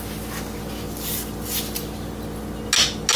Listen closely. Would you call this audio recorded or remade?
recorded